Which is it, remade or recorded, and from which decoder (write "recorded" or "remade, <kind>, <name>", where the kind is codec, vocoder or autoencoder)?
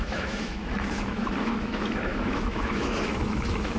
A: remade, autoencoder, DAC-VAE